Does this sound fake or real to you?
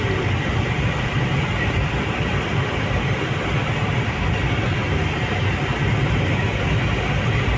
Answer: real